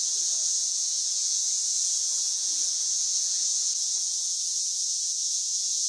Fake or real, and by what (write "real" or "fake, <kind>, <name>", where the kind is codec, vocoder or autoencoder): fake, vocoder, Vocos